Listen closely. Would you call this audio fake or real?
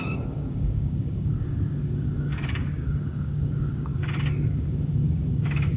fake